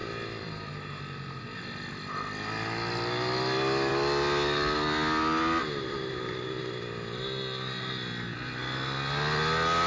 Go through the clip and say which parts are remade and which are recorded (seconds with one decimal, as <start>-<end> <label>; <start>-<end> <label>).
0.0-0.7 remade; 0.7-9.9 recorded

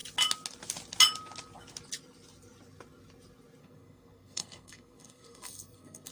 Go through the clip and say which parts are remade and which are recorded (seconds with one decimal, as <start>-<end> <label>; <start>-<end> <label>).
0.0-3.6 recorded; 3.6-6.1 remade

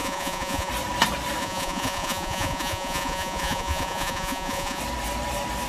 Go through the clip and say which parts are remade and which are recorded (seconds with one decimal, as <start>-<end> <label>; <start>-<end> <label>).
0.0-0.7 remade; 0.7-1.4 recorded; 1.4-4.8 remade; 4.8-5.7 recorded